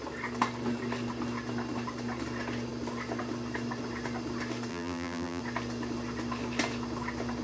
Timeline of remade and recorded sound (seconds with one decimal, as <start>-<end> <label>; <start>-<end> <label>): 0.0-4.7 recorded; 4.7-5.4 remade; 5.4-7.4 recorded